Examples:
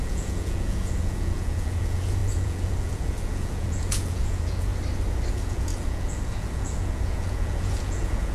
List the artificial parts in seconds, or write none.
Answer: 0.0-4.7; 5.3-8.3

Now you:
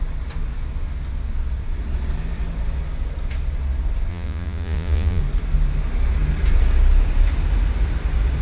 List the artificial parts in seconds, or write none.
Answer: 4.1-5.2

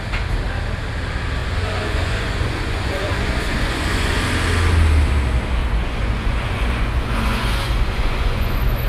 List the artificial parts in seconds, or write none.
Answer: 1.4-4.2; 5.6-8.9

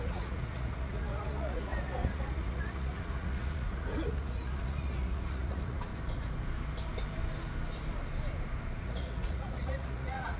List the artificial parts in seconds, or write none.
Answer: 0.0-5.9; 8.8-10.4

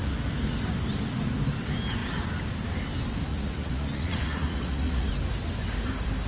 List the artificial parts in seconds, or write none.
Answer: 3.3-5.1

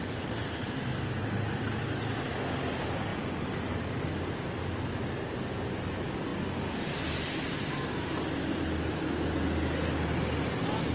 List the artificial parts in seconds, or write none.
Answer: none

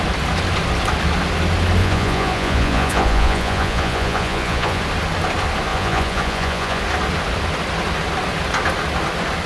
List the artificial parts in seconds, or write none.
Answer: 1.8-4.8; 5.7-6.8

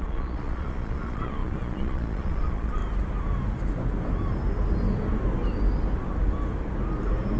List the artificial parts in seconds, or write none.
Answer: 0.0-2.8